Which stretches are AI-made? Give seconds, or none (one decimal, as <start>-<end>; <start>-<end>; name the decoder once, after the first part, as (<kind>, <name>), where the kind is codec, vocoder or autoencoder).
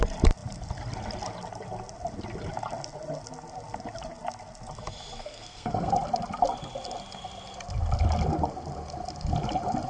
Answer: 5.2-5.9 (codec, SNAC)